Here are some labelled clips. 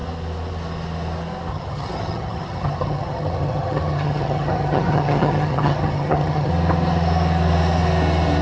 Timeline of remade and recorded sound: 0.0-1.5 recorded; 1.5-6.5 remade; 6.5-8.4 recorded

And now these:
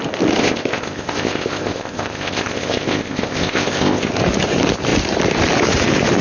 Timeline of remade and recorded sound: 0.0-0.4 recorded; 0.4-4.1 remade; 4.1-6.2 recorded

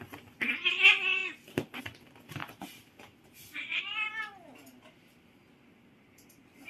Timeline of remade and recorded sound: 0.0-6.7 recorded